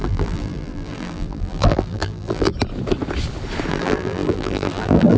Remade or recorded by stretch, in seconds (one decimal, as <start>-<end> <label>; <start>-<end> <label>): 0.0-2.5 remade; 2.5-3.7 recorded; 3.7-5.2 remade